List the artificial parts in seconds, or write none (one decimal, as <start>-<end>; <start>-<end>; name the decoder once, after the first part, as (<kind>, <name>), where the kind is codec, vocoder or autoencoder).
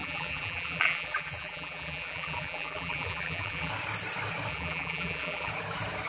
0.0-3.7 (vocoder, BigVGAN v2); 4.5-5.5